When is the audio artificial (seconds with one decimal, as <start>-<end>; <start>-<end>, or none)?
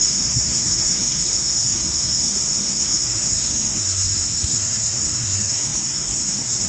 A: 0.0-6.7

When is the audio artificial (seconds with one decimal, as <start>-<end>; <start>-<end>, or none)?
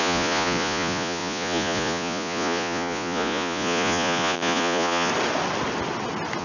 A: 0.0-5.1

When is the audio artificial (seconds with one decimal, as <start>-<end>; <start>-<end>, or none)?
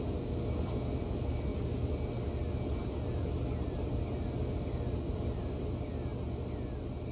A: none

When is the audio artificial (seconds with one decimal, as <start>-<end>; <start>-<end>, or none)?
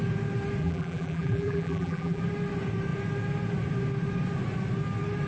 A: 0.6-2.2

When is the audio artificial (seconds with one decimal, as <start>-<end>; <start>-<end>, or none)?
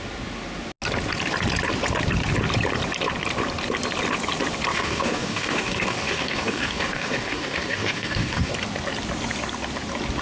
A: 4.7-8.5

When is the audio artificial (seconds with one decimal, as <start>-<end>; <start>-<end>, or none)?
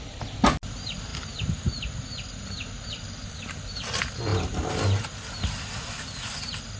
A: none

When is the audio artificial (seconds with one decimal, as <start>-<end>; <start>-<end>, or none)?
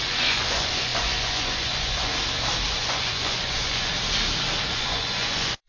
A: 0.0-2.1; 2.7-3.9; 4.7-5.7